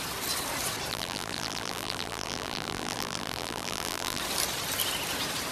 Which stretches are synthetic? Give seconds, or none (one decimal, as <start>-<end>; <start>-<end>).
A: 0.9-4.2